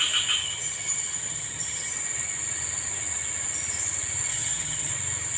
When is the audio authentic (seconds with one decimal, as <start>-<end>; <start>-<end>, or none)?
0.0-0.4; 1.9-4.3; 4.9-5.4